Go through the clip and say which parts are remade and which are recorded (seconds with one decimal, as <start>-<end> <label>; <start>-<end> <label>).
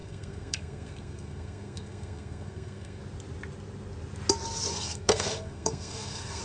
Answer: 0.0-3.0 remade; 3.0-4.7 recorded; 4.7-6.4 remade